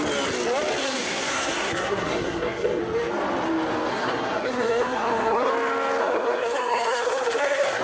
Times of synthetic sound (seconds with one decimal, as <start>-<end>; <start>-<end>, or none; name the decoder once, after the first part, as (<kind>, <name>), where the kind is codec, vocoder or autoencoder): 0.8-2.8 (codec, SNAC); 3.9-5.5; 6.0-7.8